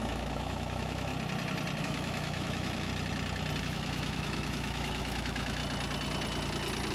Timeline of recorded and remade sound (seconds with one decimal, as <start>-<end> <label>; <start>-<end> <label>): 0.0-1.1 remade; 1.1-1.8 recorded; 1.8-2.9 remade; 2.9-3.6 recorded; 3.6-5.6 remade; 5.6-6.9 recorded